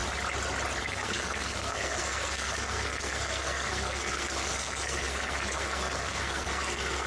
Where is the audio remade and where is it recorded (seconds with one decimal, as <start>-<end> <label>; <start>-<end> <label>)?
0.0-0.8 recorded; 0.8-7.1 remade

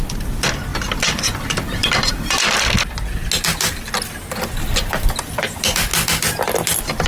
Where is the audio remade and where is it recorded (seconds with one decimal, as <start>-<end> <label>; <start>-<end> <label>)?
0.0-7.1 recorded

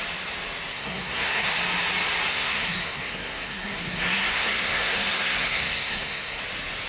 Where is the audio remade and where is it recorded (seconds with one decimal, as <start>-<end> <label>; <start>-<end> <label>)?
0.0-0.7 recorded; 0.7-1.5 remade; 1.5-2.3 recorded; 2.3-6.4 remade; 6.4-6.9 recorded

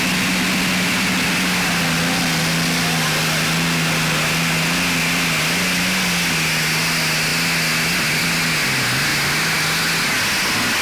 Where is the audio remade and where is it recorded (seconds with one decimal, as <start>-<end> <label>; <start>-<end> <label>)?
0.0-10.8 recorded

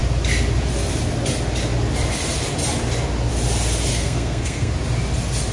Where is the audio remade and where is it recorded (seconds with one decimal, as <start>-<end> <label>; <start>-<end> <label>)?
0.0-3.9 recorded; 3.9-4.7 remade; 4.7-5.5 recorded

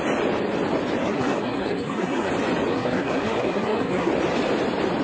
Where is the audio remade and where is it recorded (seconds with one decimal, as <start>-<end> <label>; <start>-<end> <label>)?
0.0-1.0 recorded; 1.0-2.3 remade; 2.3-2.7 recorded; 2.7-4.1 remade; 4.1-5.0 recorded

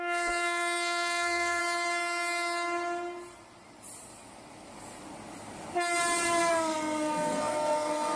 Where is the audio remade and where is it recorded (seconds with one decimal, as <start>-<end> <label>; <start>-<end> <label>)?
0.0-1.6 remade; 1.6-6.5 recorded; 6.5-8.2 remade

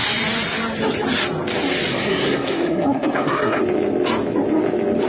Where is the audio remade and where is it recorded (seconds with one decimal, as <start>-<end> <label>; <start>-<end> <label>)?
0.0-1.9 recorded; 1.9-3.6 remade; 3.6-5.1 recorded